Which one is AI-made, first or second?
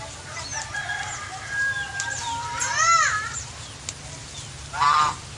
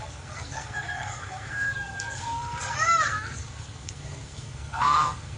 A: second